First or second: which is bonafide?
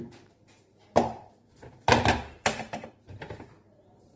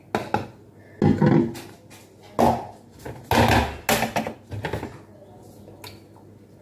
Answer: second